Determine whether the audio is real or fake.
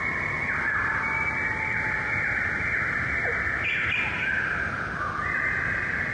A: real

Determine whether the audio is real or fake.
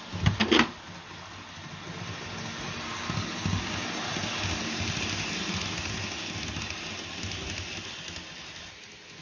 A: real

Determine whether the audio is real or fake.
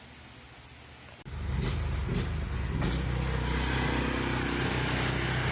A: real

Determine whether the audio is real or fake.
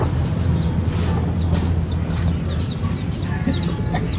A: real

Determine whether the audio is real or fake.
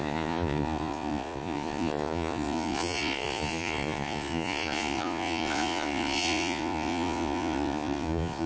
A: fake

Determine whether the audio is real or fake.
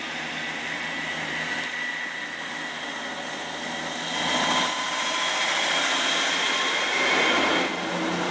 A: real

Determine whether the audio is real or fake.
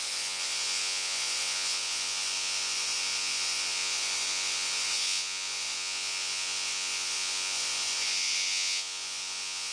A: fake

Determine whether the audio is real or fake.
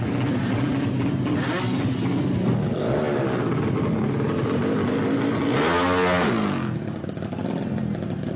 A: real